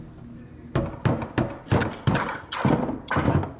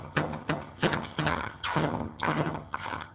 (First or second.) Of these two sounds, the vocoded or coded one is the second